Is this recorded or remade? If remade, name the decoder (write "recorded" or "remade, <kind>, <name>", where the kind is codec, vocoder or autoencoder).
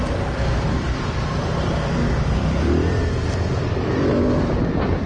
remade, vocoder, BigVGAN v2